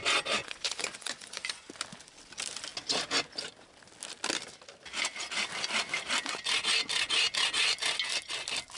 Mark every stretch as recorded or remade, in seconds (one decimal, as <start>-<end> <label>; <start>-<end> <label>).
0.0-0.4 recorded; 0.4-1.7 remade; 1.7-8.8 recorded